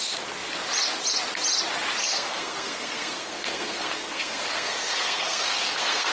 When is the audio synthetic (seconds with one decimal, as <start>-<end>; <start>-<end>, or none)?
2.0-6.1